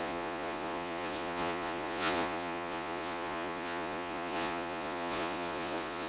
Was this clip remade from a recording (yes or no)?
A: yes